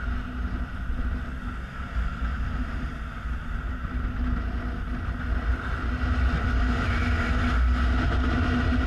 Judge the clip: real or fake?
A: real